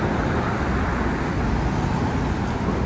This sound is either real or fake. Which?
real